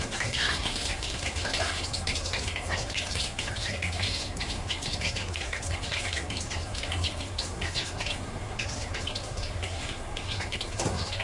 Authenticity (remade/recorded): remade